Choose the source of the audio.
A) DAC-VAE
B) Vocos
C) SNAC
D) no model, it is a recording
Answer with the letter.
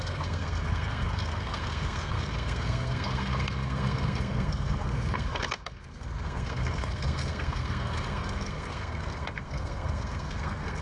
C